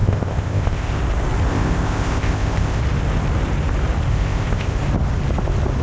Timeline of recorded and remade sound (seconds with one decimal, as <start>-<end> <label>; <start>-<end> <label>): 0.0-1.0 remade; 1.0-1.5 recorded; 1.5-2.8 remade; 2.8-4.1 recorded; 4.1-4.8 remade; 4.8-5.8 recorded